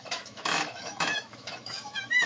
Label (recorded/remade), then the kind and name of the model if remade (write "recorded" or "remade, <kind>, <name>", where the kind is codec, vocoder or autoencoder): remade, autoencoder, DAC-VAE